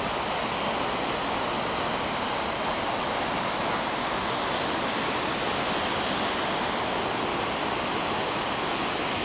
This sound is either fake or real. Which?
real